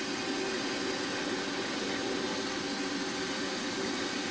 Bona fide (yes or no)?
yes